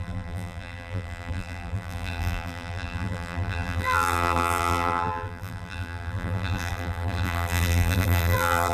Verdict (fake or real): fake